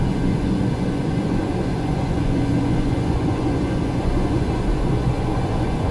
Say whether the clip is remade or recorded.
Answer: remade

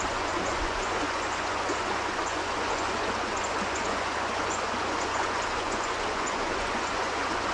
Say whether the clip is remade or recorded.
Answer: remade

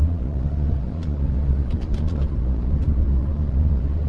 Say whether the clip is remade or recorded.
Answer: remade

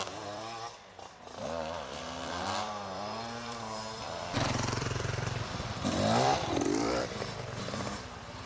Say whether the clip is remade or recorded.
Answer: remade